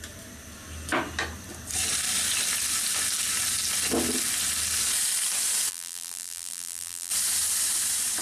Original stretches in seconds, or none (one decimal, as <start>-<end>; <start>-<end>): 0.0-5.7; 7.1-8.2